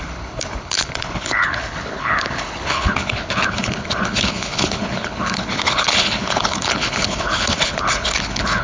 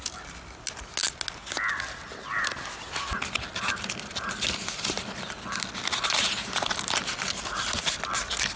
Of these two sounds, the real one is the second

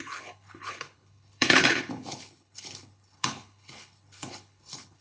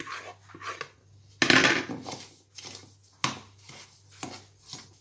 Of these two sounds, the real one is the second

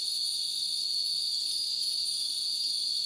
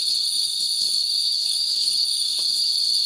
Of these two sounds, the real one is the first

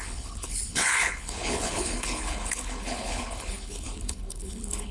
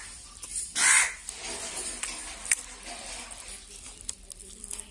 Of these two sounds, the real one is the second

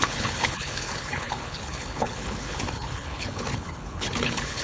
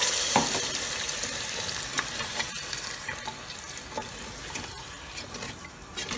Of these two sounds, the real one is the second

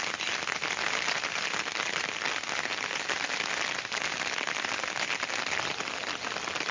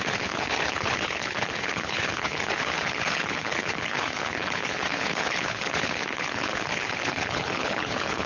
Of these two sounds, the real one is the first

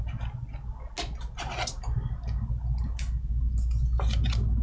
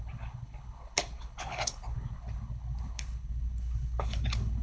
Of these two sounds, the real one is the first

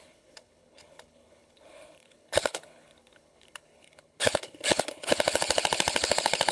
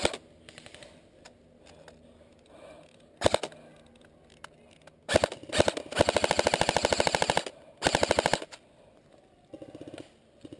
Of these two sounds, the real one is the second